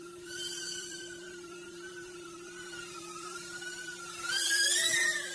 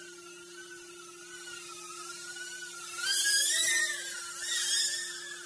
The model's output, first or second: first